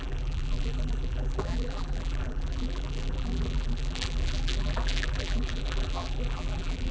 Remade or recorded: remade